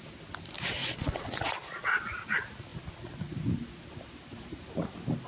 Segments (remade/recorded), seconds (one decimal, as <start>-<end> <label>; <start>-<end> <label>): 0.0-0.8 recorded; 0.8-1.5 remade; 1.5-5.3 recorded